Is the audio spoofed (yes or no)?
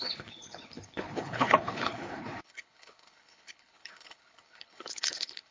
yes